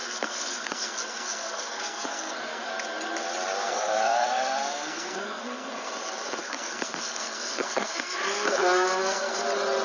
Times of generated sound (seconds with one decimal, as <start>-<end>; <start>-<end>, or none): 0.0-2.7; 3.6-5.9; 6.4-9.4